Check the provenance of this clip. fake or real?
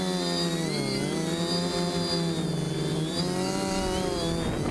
real